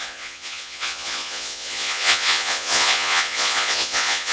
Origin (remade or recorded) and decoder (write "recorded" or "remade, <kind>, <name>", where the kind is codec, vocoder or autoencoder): remade, vocoder, Vocos